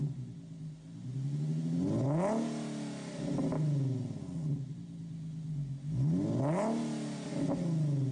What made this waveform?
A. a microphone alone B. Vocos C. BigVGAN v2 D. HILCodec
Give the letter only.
A